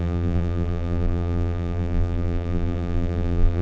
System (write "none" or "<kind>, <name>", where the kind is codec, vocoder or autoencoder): vocoder, BigVGAN v2